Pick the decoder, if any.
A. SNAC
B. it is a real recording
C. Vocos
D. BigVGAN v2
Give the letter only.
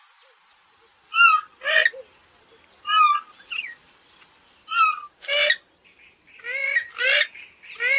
B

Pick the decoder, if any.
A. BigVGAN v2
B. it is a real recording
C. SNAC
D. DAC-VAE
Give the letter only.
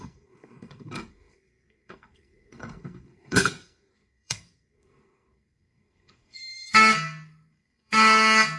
C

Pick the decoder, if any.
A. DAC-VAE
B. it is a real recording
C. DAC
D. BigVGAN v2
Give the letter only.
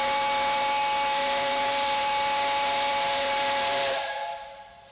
B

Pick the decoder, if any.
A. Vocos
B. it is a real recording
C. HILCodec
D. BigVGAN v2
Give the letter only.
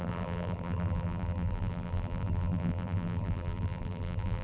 D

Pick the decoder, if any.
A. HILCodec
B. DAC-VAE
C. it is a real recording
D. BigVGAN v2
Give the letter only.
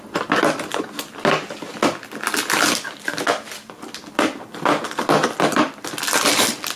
C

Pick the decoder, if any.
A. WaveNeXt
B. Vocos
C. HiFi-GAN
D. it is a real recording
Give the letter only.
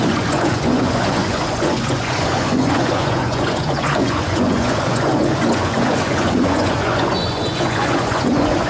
B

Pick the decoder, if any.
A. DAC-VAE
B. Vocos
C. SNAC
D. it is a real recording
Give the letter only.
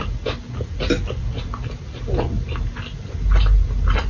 D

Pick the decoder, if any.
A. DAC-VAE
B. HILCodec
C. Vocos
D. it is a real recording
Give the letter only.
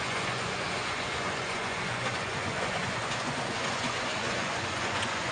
C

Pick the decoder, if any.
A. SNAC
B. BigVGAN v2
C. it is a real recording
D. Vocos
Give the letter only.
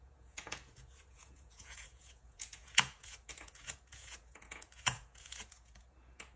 D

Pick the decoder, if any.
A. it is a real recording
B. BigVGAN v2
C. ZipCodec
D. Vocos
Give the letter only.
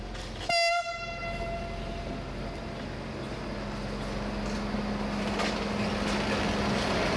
A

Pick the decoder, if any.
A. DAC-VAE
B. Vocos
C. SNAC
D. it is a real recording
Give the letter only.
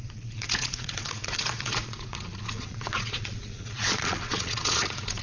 B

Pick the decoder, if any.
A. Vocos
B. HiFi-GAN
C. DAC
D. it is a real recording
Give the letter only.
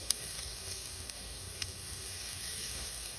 C